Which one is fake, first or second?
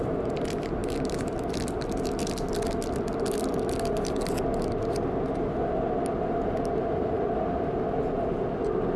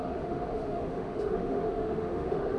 second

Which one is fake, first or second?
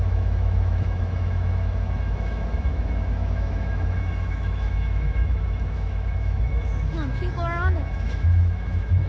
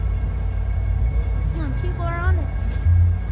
first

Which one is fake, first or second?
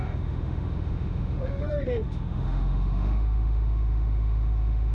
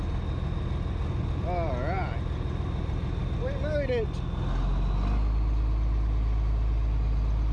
first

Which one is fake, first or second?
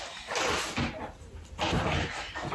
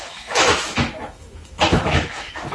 second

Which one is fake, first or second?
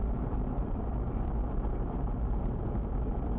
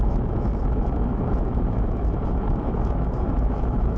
second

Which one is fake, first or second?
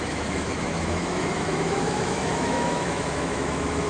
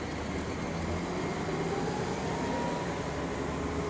first